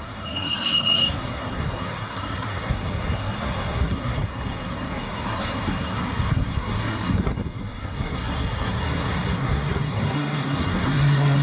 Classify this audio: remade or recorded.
remade